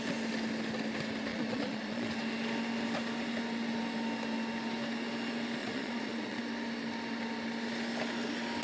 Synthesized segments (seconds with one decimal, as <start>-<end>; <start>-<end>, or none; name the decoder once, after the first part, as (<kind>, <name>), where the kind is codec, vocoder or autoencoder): 1.3-2.1 (vocoder, Vocos); 5.6-6.4